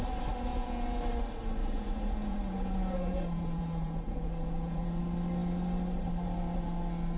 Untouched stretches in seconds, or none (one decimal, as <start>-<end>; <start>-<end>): 0.0-0.5; 1.0-1.6; 5.0-7.2